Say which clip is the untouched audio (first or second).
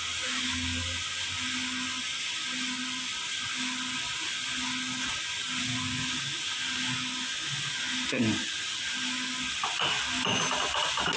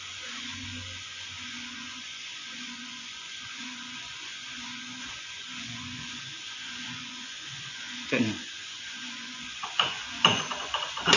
first